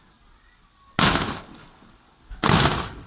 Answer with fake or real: real